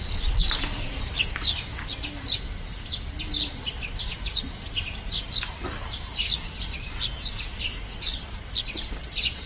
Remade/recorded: recorded